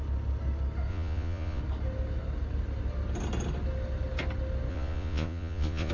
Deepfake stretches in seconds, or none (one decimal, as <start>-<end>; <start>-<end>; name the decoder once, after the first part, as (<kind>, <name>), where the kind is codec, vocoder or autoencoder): 0.9-1.6 (vocoder, Vocos); 4.7-5.9